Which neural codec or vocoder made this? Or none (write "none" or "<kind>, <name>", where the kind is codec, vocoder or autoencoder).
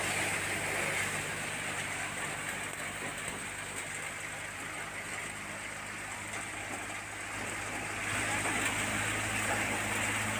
none